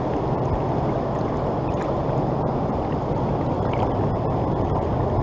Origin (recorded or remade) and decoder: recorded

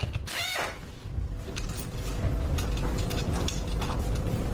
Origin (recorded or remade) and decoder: recorded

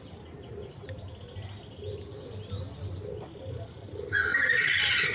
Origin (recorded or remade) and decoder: recorded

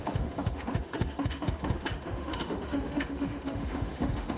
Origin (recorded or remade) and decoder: remade, autoencoder, DAC-VAE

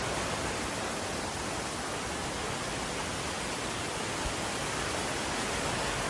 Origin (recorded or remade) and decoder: recorded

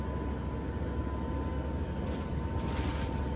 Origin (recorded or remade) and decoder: recorded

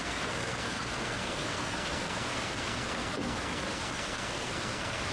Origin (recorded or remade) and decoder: remade, codec, SNAC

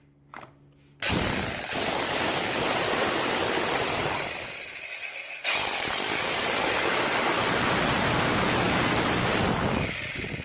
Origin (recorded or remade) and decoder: recorded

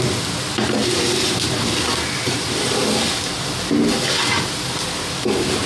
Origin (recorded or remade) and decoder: recorded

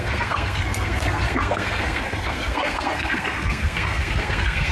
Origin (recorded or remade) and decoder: remade, codec, SNAC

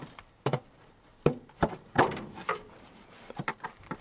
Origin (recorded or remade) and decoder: remade, vocoder, BigVGAN v2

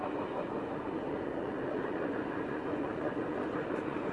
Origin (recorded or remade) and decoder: remade, vocoder, Vocos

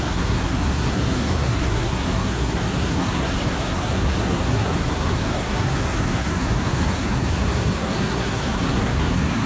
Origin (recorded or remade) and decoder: remade, codec, SNAC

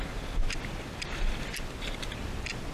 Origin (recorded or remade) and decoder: recorded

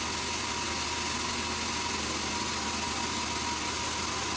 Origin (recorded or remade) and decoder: recorded